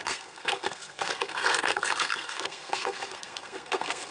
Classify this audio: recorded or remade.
remade